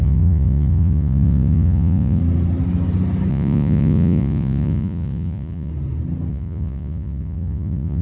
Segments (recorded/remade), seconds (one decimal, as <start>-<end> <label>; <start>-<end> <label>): 0.0-2.2 remade; 2.2-3.3 recorded; 3.3-5.7 remade; 5.7-6.3 recorded; 6.3-8.0 remade

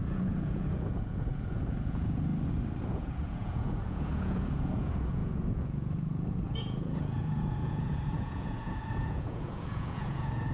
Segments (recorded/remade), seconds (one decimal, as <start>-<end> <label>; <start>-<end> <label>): 0.0-2.3 remade; 2.3-2.8 recorded; 2.8-10.5 remade

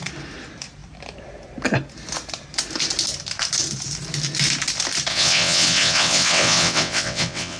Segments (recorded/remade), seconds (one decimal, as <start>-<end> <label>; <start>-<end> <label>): 0.0-5.1 recorded; 5.1-7.6 remade

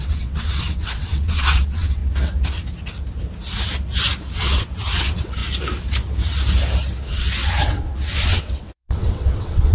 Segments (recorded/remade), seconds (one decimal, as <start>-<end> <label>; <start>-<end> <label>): 0.0-2.0 remade; 2.0-4.3 recorded; 4.3-5.4 remade; 5.4-7.1 recorded; 7.1-9.7 remade